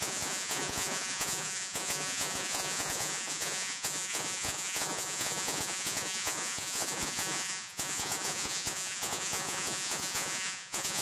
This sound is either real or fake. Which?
fake